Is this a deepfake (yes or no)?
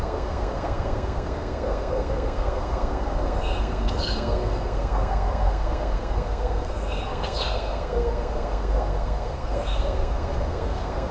yes